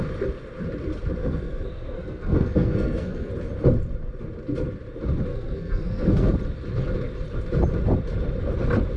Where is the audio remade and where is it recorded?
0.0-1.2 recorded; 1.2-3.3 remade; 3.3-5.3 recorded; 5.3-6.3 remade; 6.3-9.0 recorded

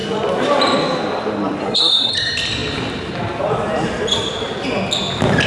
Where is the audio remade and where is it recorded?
0.0-1.6 recorded; 1.6-2.1 remade; 2.1-5.5 recorded